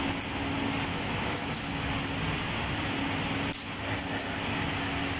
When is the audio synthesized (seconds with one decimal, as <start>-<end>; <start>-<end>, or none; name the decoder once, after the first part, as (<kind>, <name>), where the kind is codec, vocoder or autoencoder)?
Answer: 0.9-1.5 (autoencoder, DAC-VAE)